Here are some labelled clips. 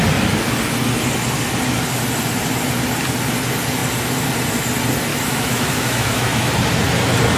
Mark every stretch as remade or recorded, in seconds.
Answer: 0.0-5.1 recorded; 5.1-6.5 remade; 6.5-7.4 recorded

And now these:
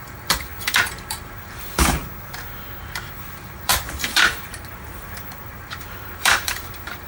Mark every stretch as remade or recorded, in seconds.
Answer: 0.0-2.0 remade; 2.0-2.8 recorded; 2.8-7.1 remade